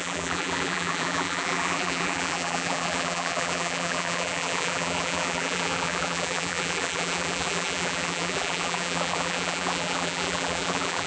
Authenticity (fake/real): fake